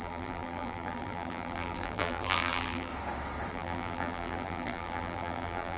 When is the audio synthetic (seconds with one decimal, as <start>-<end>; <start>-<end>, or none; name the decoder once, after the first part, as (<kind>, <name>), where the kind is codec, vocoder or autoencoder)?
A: 0.0-2.9 (vocoder, BigVGAN v2); 3.5-5.8